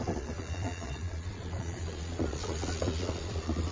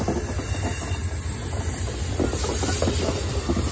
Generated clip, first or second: first